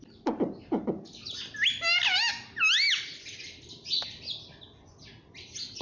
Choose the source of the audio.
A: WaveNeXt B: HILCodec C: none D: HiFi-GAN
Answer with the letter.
C